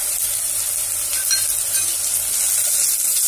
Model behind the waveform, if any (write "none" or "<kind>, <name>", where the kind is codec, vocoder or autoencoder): none